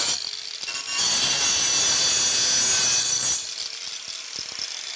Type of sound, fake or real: real